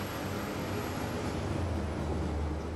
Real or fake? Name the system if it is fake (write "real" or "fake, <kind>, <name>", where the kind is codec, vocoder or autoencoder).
real